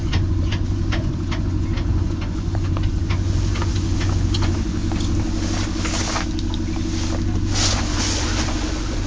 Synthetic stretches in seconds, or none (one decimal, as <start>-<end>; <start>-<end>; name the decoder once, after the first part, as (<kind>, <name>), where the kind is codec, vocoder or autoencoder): 0.0-4.8 (vocoder, Vocos); 7.7-9.1